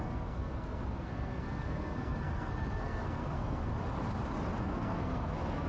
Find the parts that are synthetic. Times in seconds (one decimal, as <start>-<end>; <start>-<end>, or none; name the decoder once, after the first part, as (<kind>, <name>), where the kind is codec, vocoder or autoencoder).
0.0-3.7 (codec, SNAC); 4.6-5.7